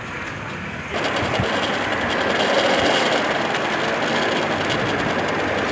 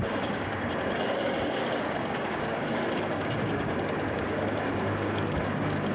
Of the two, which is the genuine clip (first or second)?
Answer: first